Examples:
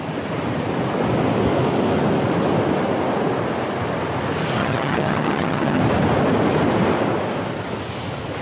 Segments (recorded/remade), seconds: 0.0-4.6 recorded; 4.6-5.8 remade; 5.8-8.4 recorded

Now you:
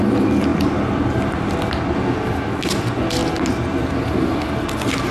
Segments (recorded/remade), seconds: 0.0-5.1 recorded